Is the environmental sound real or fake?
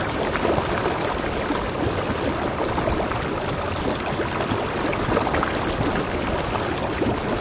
real